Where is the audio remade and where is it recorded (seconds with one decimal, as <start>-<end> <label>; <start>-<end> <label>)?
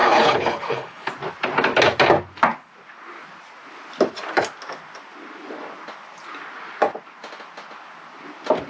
0.0-1.1 remade; 1.1-8.7 recorded